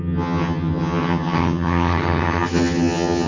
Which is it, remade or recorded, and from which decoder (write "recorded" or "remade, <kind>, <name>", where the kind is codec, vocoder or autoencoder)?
remade, vocoder, HiFi-GAN